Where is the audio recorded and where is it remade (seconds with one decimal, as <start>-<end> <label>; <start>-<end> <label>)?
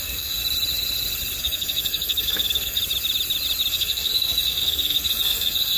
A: 0.0-0.4 remade; 0.4-1.4 recorded; 1.4-2.8 remade; 2.8-3.7 recorded; 3.7-5.8 remade